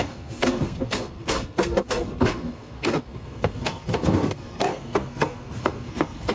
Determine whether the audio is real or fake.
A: fake